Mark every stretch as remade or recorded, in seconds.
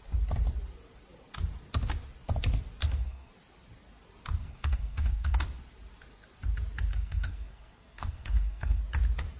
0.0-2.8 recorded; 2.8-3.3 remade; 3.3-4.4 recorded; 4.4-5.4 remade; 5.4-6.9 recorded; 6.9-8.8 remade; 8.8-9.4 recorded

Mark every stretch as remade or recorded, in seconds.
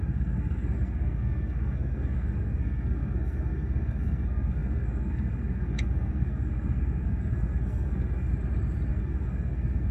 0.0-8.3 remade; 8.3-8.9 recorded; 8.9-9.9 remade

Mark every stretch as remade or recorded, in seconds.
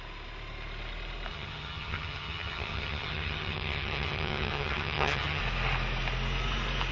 0.0-1.3 recorded; 1.3-5.4 remade; 5.4-6.9 recorded